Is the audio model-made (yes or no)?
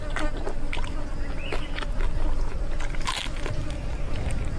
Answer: no